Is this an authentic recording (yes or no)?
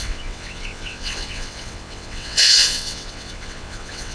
no